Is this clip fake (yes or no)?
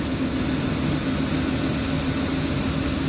no